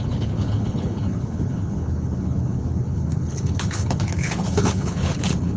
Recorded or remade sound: remade